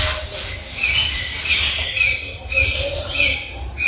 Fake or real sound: real